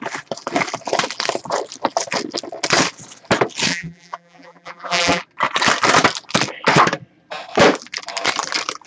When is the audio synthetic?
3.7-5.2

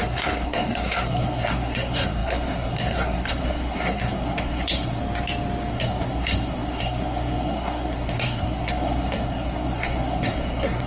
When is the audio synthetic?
0.0-5.0; 5.7-10.9

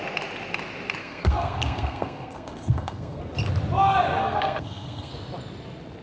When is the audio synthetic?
1.0-3.2; 4.2-5.1